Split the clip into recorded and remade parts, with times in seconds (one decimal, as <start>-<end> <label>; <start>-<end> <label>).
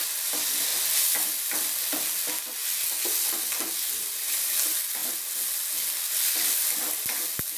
0.0-7.6 recorded